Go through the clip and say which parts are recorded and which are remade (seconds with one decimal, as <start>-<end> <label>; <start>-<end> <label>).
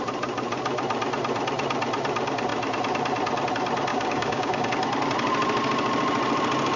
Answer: 0.0-3.9 recorded; 3.9-4.7 remade; 4.7-6.8 recorded